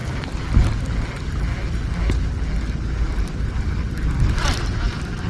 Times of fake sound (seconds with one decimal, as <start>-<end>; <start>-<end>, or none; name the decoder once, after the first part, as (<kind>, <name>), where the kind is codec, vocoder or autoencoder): none